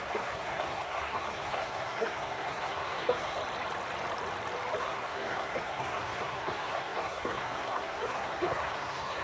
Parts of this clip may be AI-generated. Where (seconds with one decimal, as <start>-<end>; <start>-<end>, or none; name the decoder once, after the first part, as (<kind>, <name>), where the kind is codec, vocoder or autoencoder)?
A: 0.0-3.4 (codec, SNAC); 4.8-9.2